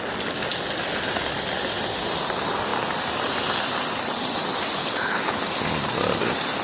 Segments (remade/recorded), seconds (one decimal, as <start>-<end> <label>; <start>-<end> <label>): 0.0-4.8 recorded; 4.8-5.5 remade; 5.5-6.6 recorded